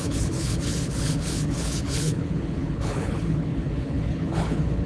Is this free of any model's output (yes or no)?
no